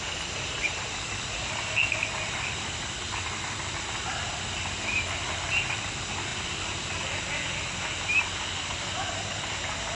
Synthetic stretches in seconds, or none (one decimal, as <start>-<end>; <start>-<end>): none